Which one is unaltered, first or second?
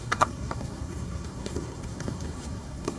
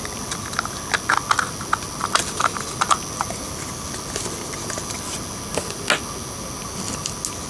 second